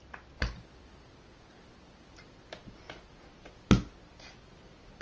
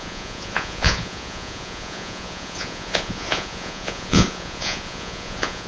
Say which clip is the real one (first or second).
first